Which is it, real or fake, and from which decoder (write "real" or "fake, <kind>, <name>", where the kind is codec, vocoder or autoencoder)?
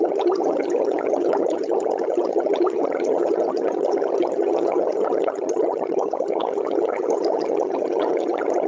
fake, vocoder, HiFi-GAN